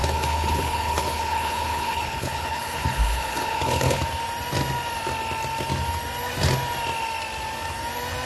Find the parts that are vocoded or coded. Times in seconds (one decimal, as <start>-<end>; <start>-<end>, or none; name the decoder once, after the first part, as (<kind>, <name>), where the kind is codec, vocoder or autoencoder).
0.0-4.0 (codec, HILCodec)